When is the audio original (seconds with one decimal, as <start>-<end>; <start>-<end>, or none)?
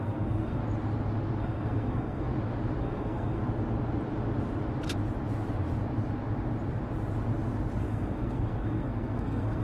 0.6-1.4; 2.3-2.8; 3.4-7.8